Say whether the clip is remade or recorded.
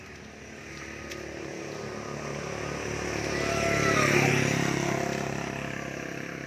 recorded